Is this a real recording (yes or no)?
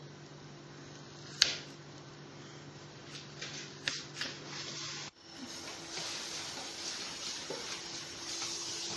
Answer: yes